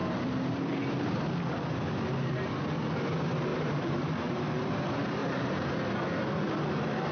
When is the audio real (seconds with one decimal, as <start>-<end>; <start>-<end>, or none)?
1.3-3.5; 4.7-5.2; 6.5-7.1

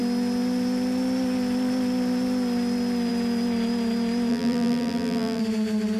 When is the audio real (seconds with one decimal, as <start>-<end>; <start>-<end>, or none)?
0.0-4.3; 5.4-6.0

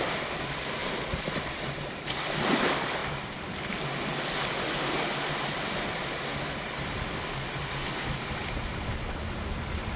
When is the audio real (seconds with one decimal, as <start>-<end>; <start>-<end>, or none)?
0.0-0.8; 2.6-3.0; 3.8-10.0

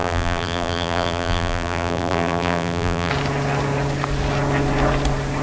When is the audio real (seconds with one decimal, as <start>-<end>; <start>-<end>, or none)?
3.1-5.4